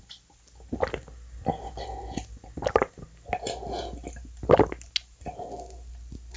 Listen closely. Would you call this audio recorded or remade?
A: recorded